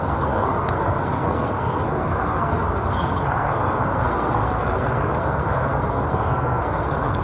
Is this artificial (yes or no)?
yes